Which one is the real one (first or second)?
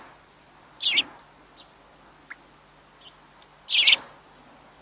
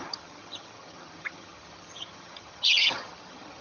first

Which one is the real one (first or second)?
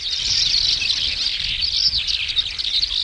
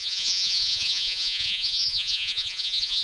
first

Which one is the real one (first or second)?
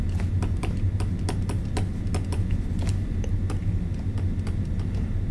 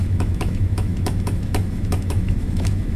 first